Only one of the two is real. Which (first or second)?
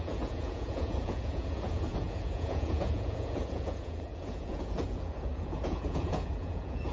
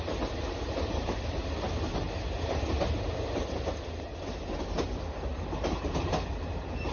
second